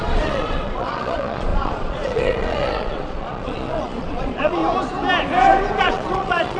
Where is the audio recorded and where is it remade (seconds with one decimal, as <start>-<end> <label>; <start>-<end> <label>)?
0.0-4.6 remade; 4.6-5.8 recorded; 5.8-6.6 remade